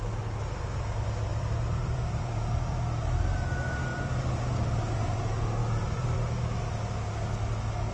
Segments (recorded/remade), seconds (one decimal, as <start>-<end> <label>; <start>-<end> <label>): 0.0-1.3 recorded; 1.3-3.2 remade; 3.2-3.9 recorded; 3.9-4.5 remade; 4.5-5.6 recorded; 5.6-6.2 remade; 6.2-7.9 recorded